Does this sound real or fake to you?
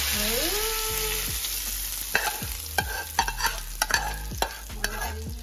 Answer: real